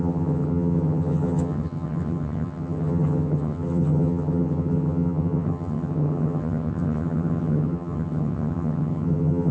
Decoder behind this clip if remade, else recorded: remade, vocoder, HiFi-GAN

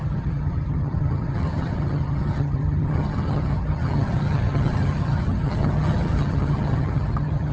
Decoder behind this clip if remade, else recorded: remade, vocoder, HiFi-GAN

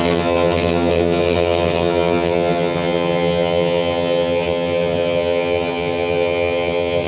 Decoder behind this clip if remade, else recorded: remade, vocoder, HiFi-GAN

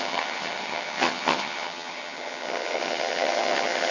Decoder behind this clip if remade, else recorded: remade, vocoder, HiFi-GAN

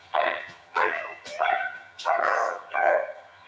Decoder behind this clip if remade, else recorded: remade, vocoder, HiFi-GAN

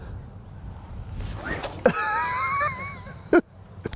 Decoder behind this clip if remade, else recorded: recorded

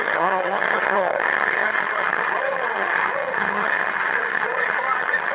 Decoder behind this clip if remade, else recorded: remade, vocoder, HiFi-GAN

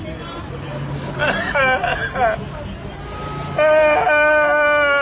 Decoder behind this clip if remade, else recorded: recorded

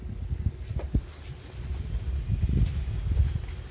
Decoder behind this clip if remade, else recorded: recorded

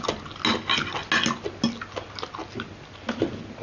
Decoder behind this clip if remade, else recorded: recorded